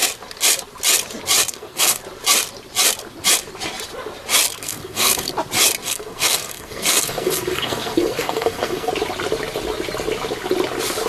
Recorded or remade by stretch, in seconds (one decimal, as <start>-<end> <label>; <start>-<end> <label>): 0.0-1.5 recorded; 1.5-2.0 remade; 2.0-4.6 recorded; 4.6-5.3 remade; 5.3-5.8 recorded; 5.8-8.9 remade; 8.9-11.1 recorded